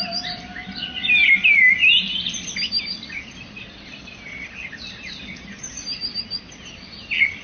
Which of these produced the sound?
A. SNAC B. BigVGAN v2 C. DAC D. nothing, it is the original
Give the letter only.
D